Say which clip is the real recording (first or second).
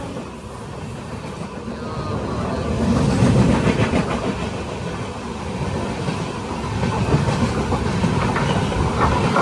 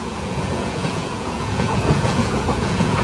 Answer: first